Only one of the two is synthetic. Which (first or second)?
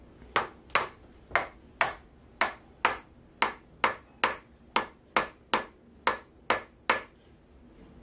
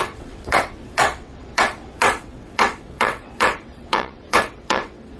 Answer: second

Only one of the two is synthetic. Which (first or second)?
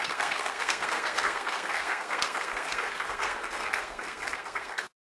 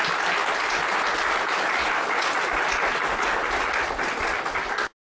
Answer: first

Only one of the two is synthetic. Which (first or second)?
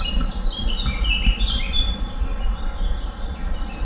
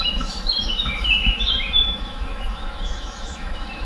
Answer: second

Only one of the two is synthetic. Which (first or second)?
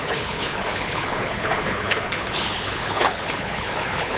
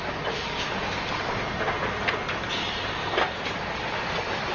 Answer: first